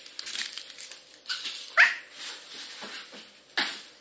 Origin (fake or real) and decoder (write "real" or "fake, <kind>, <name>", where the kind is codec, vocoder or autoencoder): real